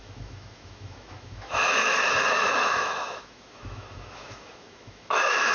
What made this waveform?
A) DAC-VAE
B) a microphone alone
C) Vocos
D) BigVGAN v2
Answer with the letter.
A